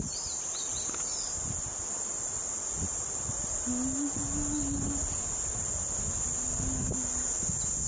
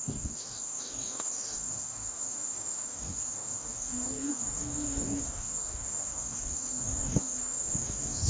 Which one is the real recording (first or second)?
first